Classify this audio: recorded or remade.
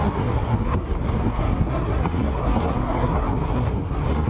remade